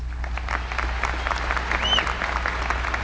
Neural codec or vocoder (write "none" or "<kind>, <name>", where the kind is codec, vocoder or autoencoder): none